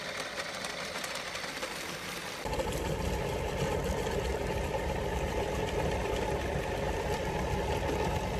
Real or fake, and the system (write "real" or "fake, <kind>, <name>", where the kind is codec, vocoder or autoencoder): fake, vocoder, BigVGAN v2